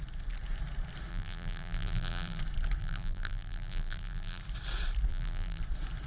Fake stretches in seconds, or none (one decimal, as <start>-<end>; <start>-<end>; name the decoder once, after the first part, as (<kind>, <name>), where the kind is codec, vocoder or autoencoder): 1.1-2.4 (vocoder, BigVGAN v2); 2.8-4.4; 5.1-5.6